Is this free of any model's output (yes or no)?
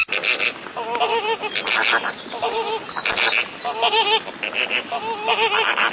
yes